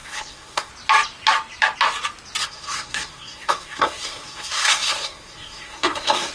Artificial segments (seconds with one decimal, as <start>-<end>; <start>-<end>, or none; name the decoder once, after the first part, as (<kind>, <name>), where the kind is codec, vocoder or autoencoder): 0.0-0.7 (codec, SNAC); 2.4-6.3